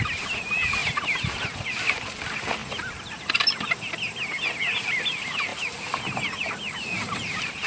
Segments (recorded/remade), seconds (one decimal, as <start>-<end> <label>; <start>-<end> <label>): 0.0-2.6 recorded; 2.6-3.3 remade; 3.3-5.5 recorded; 5.5-7.7 remade

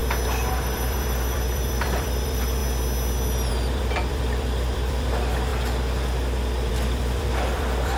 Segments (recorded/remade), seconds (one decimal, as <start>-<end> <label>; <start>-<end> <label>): 0.0-0.5 recorded; 0.5-2.6 remade; 2.6-3.5 recorded; 3.5-5.5 remade; 5.5-6.7 recorded; 6.7-8.0 remade

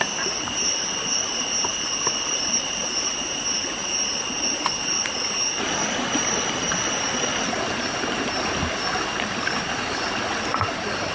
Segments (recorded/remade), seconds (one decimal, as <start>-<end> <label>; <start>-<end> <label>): 0.0-11.1 recorded

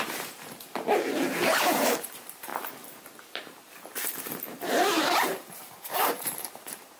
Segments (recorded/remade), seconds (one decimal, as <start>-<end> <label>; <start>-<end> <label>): 0.0-2.5 remade; 2.5-3.3 recorded; 3.3-7.0 remade

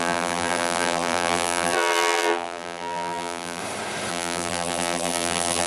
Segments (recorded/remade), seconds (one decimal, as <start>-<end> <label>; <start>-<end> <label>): 0.0-3.6 remade; 3.6-4.1 recorded; 4.1-5.7 remade

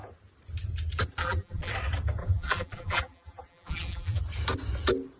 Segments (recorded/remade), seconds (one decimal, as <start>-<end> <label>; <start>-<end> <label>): 0.0-1.2 recorded; 1.2-1.7 remade; 1.7-2.2 recorded; 2.2-4.2 remade; 4.2-5.2 recorded

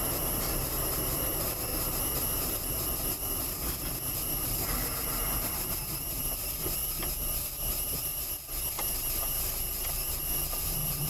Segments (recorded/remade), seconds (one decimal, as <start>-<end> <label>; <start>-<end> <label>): 0.0-11.1 recorded

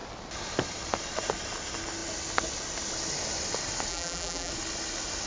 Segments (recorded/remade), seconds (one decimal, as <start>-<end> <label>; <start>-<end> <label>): 0.0-3.9 recorded; 3.9-4.5 remade; 4.5-5.3 recorded